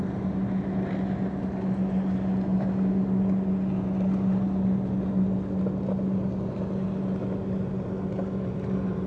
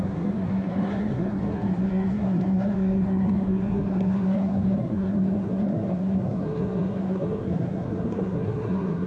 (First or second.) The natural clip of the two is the first